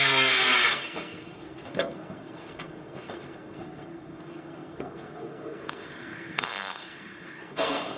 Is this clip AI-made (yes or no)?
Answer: yes